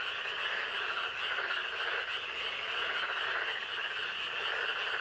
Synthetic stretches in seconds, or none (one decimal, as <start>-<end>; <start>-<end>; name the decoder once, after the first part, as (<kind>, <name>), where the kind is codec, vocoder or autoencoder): none